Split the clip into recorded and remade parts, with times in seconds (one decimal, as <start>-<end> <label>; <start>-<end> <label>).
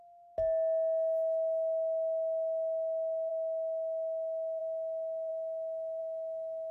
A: 0.0-3.3 recorded; 3.3-4.6 remade; 4.6-6.7 recorded